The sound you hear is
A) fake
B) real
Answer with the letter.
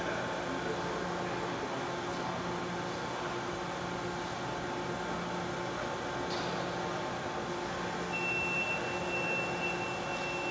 B